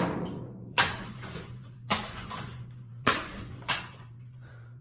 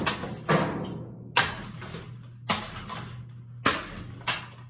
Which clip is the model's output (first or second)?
first